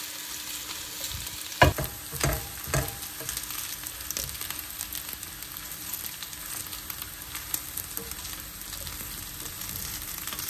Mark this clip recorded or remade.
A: recorded